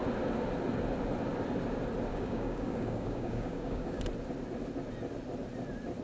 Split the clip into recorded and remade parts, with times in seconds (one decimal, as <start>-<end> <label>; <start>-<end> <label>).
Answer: 0.0-2.1 recorded; 2.1-4.0 remade; 4.0-6.0 recorded